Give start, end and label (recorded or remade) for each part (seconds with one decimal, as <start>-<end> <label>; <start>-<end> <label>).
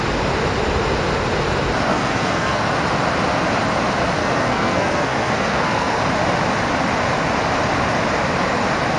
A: 0.0-1.9 recorded; 1.9-2.6 remade; 2.6-4.2 recorded; 4.2-6.0 remade; 6.0-9.0 recorded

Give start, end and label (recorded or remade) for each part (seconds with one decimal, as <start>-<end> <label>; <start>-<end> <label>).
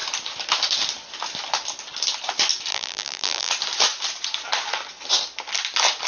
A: 0.0-2.7 recorded; 2.7-3.5 remade; 3.5-6.1 recorded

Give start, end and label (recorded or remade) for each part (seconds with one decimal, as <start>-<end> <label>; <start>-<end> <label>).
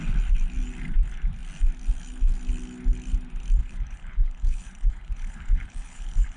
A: 0.0-3.6 recorded; 3.6-6.4 remade